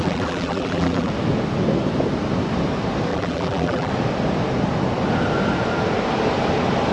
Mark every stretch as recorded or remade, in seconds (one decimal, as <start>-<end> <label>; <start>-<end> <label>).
0.0-1.1 remade; 1.1-3.1 recorded; 3.1-3.9 remade; 3.9-6.9 recorded